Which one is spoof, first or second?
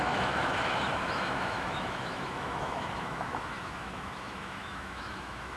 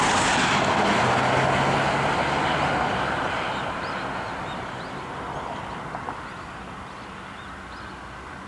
first